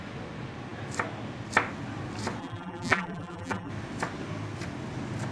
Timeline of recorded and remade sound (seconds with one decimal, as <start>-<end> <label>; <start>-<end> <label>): 0.0-2.4 recorded; 2.4-3.7 remade; 3.7-5.3 recorded